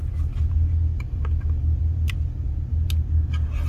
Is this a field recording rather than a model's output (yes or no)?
yes